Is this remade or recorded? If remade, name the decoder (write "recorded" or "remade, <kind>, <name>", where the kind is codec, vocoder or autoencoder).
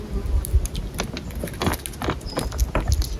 recorded